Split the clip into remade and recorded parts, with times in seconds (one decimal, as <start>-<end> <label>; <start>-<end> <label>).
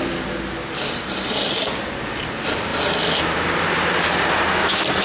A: 0.0-5.0 recorded